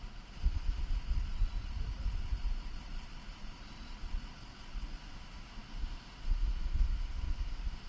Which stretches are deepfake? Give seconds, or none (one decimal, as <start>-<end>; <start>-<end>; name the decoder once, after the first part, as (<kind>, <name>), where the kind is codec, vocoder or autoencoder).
0.0-0.8 (autoencoder, DAC-VAE); 5.0-7.9